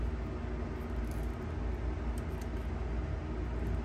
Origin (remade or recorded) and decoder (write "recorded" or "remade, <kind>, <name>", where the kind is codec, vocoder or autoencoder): recorded